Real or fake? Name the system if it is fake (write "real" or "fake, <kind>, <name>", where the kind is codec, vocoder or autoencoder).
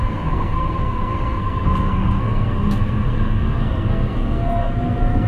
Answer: fake, codec, SNAC